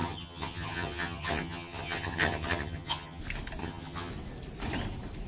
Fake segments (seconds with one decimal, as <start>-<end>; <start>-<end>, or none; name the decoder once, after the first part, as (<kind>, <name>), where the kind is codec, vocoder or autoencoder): 0.0-3.2 (vocoder, HiFi-GAN); 3.6-4.1